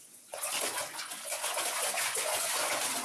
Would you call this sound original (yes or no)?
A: no